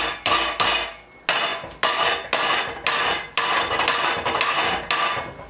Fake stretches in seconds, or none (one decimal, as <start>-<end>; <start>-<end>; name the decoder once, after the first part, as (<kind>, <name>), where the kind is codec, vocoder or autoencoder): none